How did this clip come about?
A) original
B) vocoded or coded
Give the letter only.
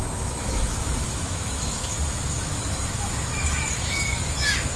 B